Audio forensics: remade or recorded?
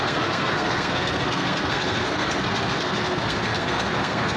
remade